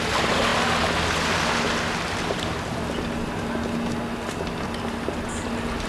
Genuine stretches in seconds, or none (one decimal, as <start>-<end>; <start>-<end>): 0.0-5.9